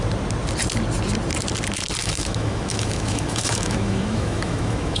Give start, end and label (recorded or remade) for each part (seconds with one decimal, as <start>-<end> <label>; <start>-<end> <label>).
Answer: 0.0-2.0 recorded; 2.0-5.0 remade